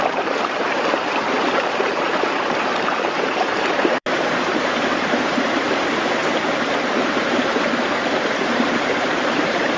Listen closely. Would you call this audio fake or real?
fake